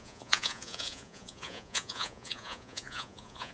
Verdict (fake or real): fake